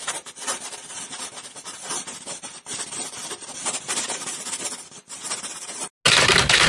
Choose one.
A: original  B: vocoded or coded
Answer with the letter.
A